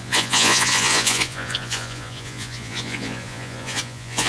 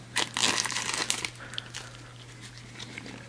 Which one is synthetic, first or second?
first